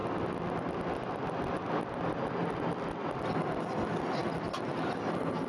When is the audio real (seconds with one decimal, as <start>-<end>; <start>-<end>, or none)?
0.0-5.5

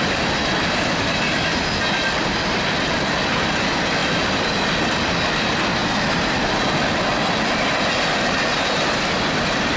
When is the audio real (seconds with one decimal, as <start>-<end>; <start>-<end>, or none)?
0.0-9.8

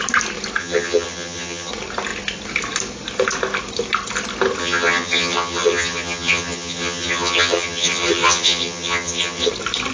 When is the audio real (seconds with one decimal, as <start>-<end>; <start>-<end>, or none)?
0.0-0.6; 1.7-4.6; 9.5-9.9

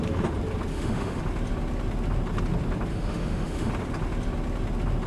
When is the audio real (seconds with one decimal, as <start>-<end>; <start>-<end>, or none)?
0.0-0.7; 1.2-2.9; 3.7-5.1

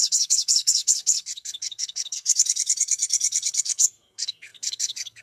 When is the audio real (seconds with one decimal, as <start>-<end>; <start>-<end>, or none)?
none

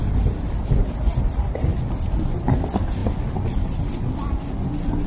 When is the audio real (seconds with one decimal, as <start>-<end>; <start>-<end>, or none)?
0.0-5.1

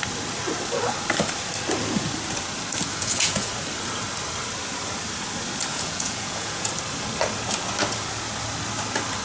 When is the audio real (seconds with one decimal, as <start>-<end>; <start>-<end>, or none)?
0.0-2.9; 3.5-5.7; 6.7-9.2

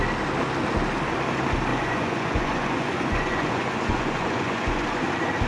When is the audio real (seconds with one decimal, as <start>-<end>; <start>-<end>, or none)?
0.0-1.7; 5.0-5.5